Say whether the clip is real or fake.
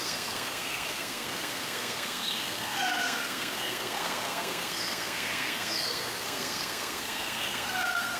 fake